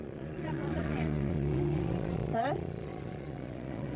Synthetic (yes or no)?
yes